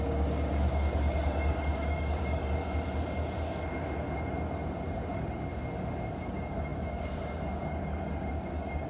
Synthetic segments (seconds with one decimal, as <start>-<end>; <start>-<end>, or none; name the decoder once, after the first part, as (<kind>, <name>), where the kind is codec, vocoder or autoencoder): 0.0-2.6 (codec, DAC); 5.0-5.5; 6.1-8.9